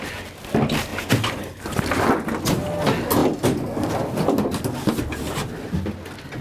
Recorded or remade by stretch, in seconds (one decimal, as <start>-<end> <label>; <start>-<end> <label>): 0.0-0.9 recorded; 0.9-1.4 remade; 1.4-6.4 recorded